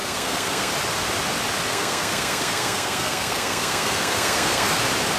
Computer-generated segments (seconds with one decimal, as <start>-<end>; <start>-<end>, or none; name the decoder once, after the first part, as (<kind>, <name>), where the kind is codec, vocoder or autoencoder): 0.0-0.7 (codec, SNAC); 1.7-4.8